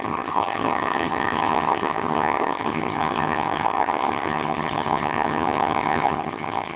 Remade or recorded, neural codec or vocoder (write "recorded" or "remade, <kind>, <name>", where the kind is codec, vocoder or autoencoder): remade, vocoder, HiFi-GAN